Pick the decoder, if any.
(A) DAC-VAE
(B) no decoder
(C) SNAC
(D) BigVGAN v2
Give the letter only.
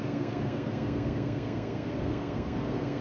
C